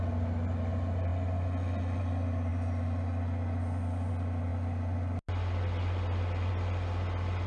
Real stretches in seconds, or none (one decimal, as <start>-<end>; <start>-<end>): 0.0-7.5